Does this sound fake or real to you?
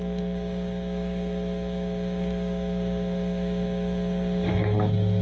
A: fake